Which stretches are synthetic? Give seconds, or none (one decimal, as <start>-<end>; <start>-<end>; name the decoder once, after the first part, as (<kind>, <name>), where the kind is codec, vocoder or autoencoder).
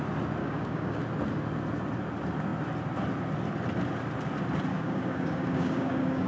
0.4-1.0 (codec, DAC); 4.7-6.3